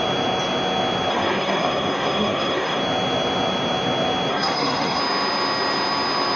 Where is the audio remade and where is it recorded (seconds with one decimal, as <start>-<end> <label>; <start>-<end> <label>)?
0.0-1.1 recorded; 1.1-2.8 remade; 2.8-4.3 recorded; 4.3-5.0 remade; 5.0-6.4 recorded